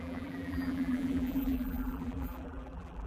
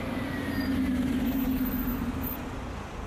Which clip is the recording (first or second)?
second